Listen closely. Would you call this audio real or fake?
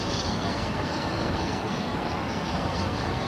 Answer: fake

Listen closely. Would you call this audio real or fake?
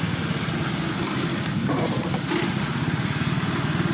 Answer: real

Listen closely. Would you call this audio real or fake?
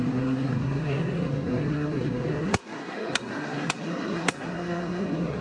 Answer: fake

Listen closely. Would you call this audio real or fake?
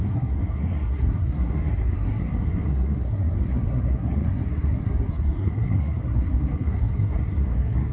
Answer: fake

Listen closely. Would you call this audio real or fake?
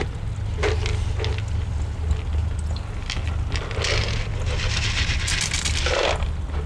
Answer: real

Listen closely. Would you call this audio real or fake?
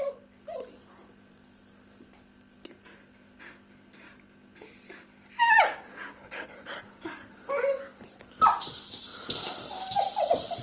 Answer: real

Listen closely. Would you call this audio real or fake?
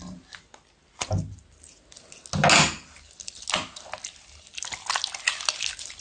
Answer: real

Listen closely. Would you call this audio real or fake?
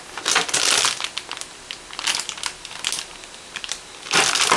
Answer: real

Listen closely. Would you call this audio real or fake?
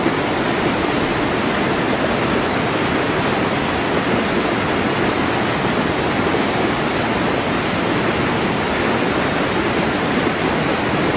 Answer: real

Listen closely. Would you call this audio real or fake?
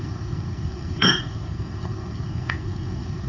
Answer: fake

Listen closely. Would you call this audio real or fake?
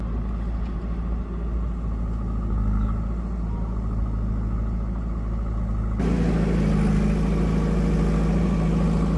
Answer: real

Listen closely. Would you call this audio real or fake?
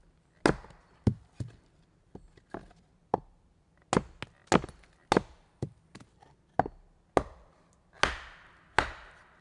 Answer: real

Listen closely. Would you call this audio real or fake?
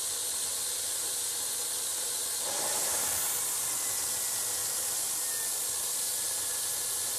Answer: real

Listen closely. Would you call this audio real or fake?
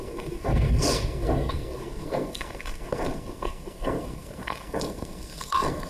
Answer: fake